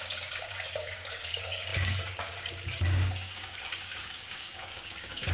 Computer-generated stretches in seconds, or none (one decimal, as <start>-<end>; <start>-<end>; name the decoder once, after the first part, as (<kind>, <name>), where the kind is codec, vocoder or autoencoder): 0.0-5.3 (codec, DAC)